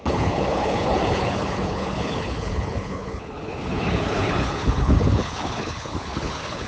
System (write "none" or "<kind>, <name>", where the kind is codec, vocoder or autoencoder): codec, HILCodec